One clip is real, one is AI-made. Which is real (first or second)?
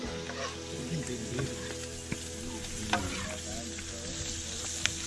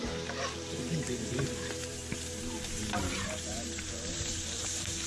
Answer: first